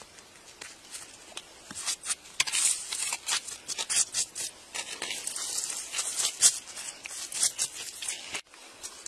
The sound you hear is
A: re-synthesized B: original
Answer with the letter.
B